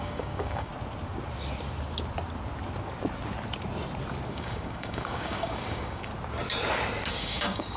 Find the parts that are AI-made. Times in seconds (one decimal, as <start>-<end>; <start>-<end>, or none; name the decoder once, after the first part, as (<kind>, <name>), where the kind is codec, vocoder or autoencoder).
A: 0.0-0.7 (codec, DAC); 4.3-6.1; 7.1-7.8